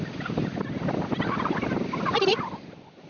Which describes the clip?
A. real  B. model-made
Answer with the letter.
A